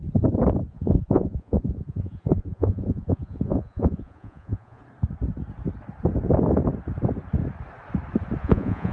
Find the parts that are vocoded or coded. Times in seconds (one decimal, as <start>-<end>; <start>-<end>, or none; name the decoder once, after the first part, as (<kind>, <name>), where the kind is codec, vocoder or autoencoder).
0.7-4.8 (vocoder, Vocos); 8.4-8.9